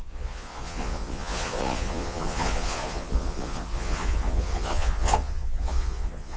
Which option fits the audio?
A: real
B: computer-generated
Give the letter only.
B